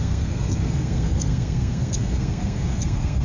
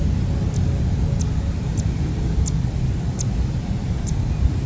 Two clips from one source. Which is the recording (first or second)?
second